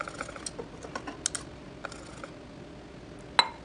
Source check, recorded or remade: recorded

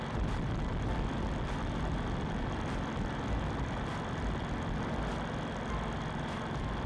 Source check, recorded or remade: recorded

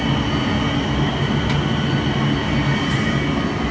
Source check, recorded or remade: recorded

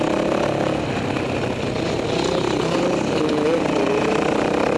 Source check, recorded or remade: recorded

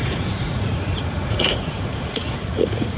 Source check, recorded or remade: remade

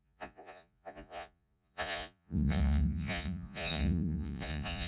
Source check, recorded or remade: remade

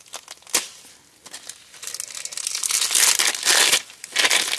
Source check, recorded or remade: recorded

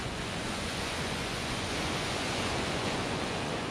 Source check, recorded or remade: remade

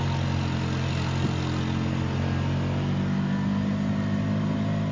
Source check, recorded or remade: recorded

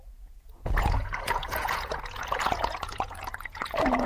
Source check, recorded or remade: remade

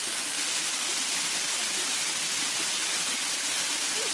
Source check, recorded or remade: recorded